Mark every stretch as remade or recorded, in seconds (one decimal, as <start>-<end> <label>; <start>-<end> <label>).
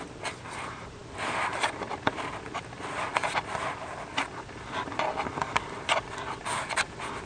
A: 0.0-7.3 recorded